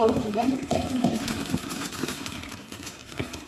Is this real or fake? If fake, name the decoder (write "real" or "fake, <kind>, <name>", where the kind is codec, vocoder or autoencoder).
fake, codec, SNAC